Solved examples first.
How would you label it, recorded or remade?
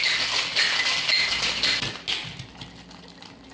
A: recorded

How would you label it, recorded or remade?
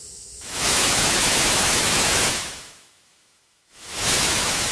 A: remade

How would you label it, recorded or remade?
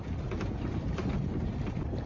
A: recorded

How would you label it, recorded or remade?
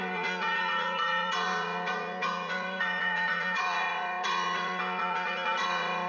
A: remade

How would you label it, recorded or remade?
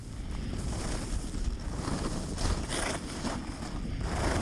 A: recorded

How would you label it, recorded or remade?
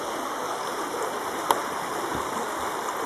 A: recorded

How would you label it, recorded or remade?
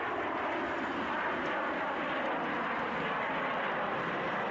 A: recorded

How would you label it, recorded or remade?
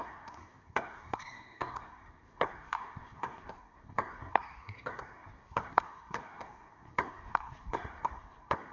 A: remade